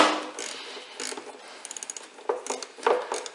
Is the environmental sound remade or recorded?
recorded